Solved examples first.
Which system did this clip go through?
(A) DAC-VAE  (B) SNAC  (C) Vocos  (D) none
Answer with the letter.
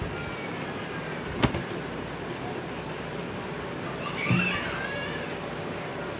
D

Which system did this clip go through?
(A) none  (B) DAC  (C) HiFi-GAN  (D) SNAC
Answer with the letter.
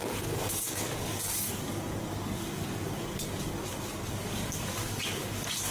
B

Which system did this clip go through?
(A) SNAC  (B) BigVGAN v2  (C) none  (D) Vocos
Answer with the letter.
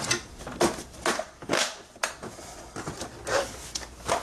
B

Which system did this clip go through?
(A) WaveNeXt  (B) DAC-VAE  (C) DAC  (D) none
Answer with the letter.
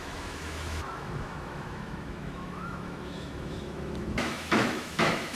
B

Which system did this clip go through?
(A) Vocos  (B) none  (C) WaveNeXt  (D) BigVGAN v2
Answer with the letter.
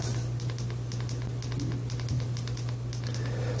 B